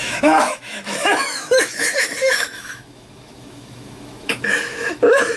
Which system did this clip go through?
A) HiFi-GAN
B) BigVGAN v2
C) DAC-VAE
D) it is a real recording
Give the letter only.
C